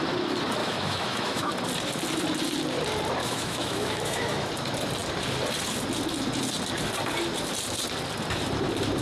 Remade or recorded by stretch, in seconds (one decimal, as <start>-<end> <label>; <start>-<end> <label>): 0.0-0.6 recorded; 0.6-1.5 remade; 1.5-3.2 recorded; 3.2-4.5 remade; 4.5-9.0 recorded

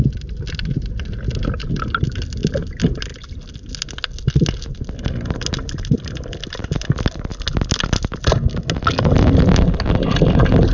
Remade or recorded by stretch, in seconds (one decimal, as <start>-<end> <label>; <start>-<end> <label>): 0.0-10.7 recorded

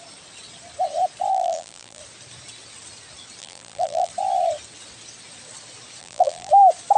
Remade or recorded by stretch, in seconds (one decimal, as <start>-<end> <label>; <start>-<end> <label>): 0.0-1.3 recorded; 1.3-2.0 remade; 2.0-3.4 recorded; 3.4-4.1 remade; 4.1-6.0 recorded; 6.0-6.5 remade; 6.5-7.0 recorded

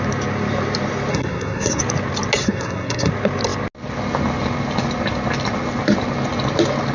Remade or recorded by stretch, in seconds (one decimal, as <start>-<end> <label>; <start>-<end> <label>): 0.0-1.1 recorded; 1.1-1.8 remade; 1.8-2.4 recorded; 2.4-3.1 remade; 3.1-6.9 recorded